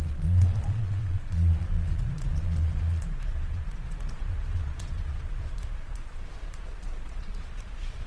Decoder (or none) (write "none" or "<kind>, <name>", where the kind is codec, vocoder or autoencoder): vocoder, Vocos